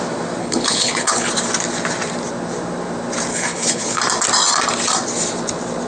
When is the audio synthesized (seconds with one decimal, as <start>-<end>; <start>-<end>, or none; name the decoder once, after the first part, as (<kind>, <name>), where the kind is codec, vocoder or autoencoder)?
0.4-1.3 (codec, HILCodec); 3.3-4.0